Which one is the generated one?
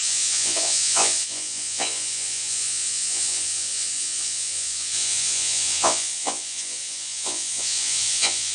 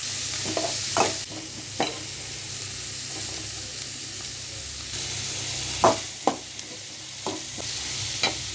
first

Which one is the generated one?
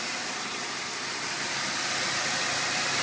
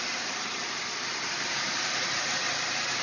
second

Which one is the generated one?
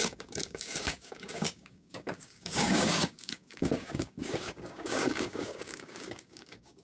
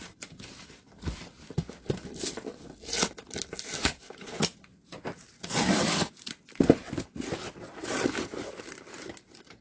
first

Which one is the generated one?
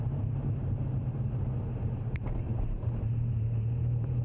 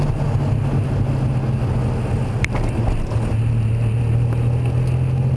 first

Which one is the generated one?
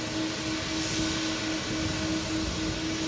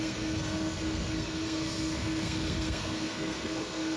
second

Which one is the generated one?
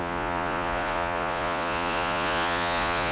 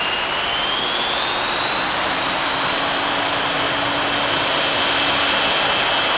first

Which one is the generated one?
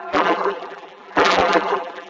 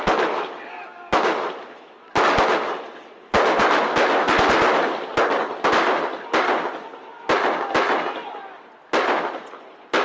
first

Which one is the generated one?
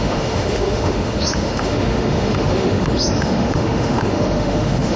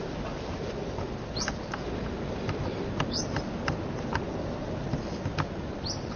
first